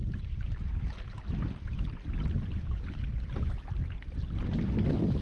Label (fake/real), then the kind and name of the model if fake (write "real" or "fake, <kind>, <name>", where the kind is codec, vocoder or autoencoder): real